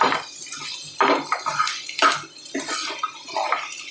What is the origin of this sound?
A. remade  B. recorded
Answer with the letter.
B